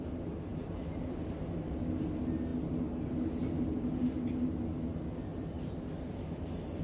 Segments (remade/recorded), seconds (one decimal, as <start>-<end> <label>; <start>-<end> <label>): 0.0-5.3 recorded; 5.3-6.8 remade